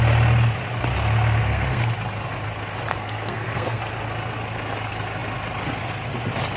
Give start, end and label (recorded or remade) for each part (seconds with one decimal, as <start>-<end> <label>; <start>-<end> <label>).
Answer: 0.0-1.4 recorded; 1.4-1.9 remade; 1.9-2.9 recorded; 2.9-3.8 remade; 3.8-6.6 recorded